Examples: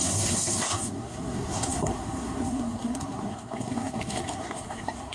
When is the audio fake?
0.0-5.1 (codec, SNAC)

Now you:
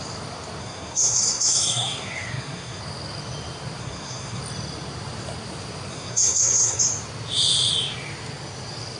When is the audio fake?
0.6-2.8 (codec, SNAC); 3.8-4.4; 5.9-6.8

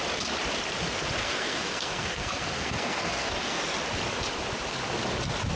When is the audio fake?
1.2-3.6 (codec, SNAC)

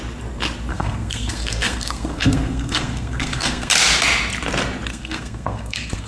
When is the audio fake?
0.7-3.7 (codec, SNAC); 4.9-6.1

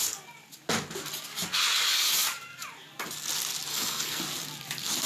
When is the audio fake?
3.7-4.2 (codec, SNAC)